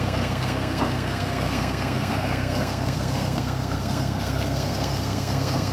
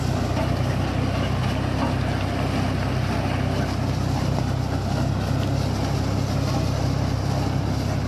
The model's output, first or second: first